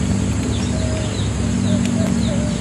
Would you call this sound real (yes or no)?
yes